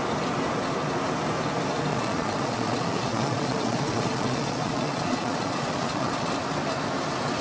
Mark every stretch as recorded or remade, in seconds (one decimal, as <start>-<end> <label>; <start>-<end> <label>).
0.0-1.9 recorded; 1.9-6.3 remade; 6.3-7.4 recorded